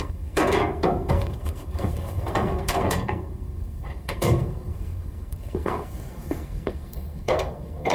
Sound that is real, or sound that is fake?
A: fake